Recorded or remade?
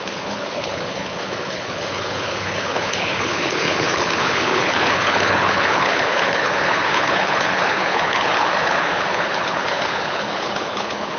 remade